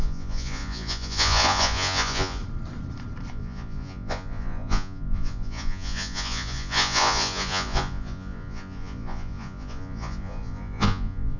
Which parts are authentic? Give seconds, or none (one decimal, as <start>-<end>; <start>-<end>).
2.4-3.3